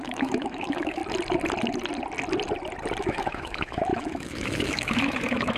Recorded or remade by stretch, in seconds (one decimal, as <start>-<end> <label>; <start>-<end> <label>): 0.0-1.0 remade; 1.0-3.0 recorded; 3.0-5.6 remade